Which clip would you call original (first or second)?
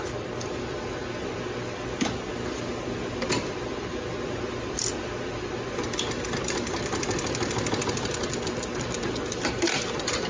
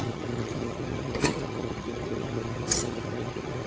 first